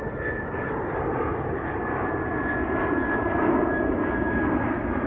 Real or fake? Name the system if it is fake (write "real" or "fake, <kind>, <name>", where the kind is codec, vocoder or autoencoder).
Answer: real